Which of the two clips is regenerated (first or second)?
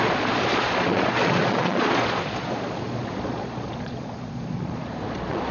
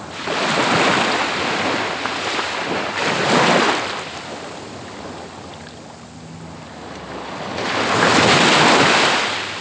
first